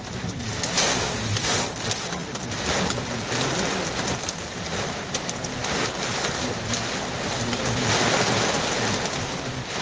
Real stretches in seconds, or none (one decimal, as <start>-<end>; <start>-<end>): 0.0-9.8